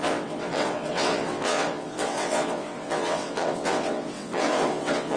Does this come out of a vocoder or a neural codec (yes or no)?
yes